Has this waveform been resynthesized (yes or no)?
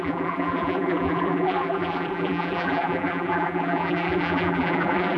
yes